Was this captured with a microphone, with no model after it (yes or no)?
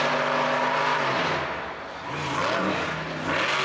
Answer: yes